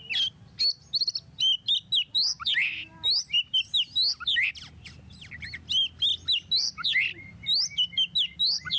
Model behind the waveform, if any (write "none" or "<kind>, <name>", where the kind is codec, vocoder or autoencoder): none